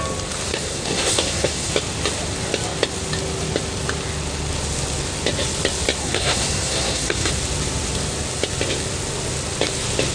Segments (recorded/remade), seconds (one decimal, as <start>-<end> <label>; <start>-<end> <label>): 0.0-0.5 recorded; 0.5-1.7 remade; 1.7-6.0 recorded; 6.0-7.3 remade; 7.3-10.1 recorded